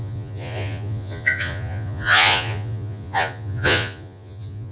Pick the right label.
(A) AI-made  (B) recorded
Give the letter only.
A